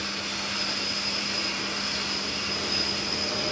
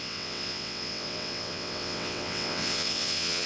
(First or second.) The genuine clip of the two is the first